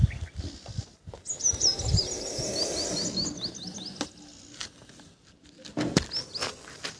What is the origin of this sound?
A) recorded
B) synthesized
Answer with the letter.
A